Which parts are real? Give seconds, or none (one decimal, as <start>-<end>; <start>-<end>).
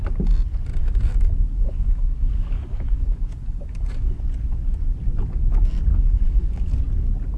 0.0-0.8; 4.2-5.9; 6.8-7.4